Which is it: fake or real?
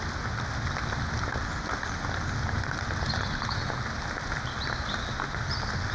real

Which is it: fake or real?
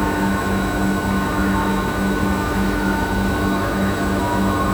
fake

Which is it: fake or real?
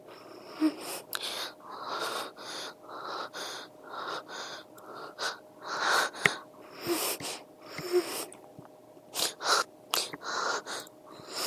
real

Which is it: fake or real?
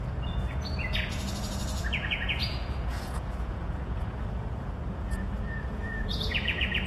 fake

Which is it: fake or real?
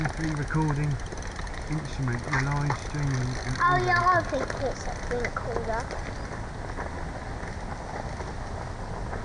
real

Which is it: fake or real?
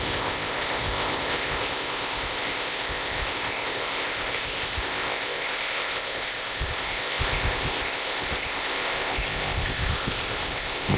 fake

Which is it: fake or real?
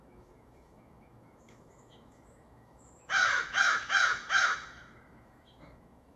fake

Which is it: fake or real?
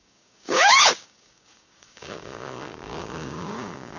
fake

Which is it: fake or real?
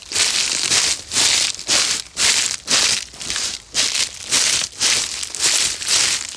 real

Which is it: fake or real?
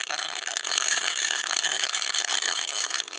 fake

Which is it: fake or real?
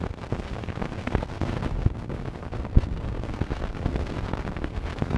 fake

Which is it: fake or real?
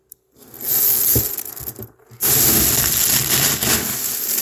real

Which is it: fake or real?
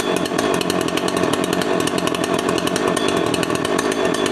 real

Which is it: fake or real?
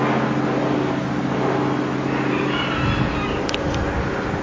real